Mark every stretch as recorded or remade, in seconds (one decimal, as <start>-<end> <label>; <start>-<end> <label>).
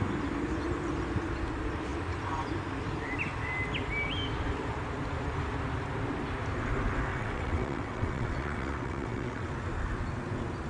0.0-7.1 recorded; 7.1-9.5 remade; 9.5-10.7 recorded